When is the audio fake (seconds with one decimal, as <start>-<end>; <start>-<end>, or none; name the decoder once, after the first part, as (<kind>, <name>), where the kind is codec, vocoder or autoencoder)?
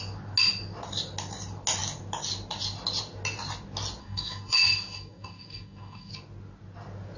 4.0-6.1 (codec, DAC)